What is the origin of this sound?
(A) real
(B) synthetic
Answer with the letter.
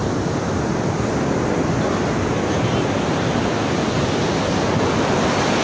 A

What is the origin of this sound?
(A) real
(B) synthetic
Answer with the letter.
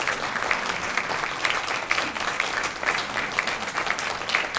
A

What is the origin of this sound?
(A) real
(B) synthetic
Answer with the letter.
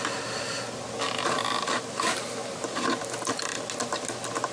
A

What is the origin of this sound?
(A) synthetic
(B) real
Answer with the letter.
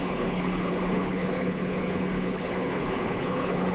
A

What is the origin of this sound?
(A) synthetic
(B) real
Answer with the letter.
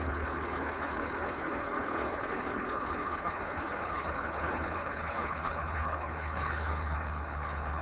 A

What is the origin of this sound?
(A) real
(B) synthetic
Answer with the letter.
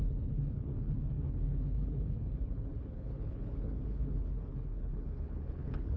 B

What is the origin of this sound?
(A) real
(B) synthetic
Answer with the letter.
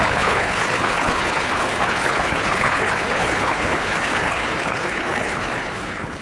B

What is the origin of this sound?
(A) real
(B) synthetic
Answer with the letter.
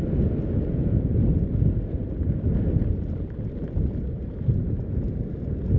A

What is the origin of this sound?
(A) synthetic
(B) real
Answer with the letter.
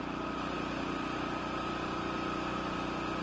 B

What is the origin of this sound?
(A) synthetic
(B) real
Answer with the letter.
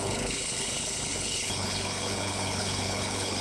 A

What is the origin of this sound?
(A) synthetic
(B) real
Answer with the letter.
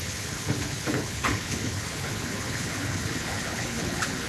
A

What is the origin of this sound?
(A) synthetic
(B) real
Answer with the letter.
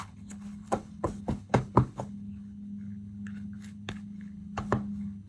A